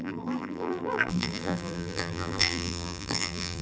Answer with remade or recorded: remade